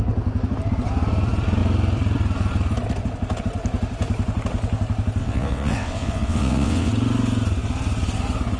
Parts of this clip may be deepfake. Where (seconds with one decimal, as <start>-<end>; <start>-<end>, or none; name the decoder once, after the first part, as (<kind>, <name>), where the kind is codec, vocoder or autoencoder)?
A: 5.2-6.9 (vocoder, WaveNeXt)